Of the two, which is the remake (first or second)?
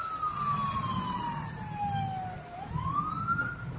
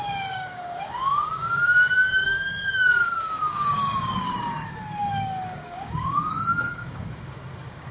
second